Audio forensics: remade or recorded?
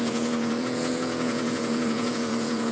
remade